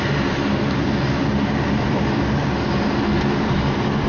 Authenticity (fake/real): real